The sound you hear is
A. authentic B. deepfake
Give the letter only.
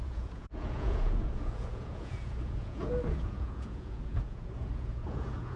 B